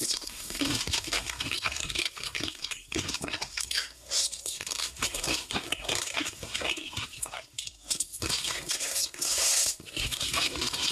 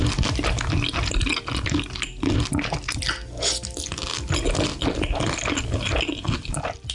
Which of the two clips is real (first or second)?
second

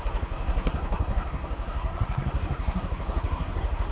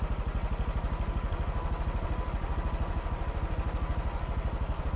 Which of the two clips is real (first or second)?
second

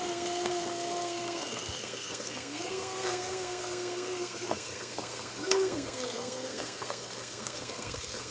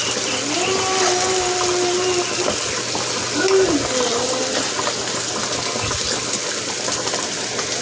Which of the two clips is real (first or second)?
second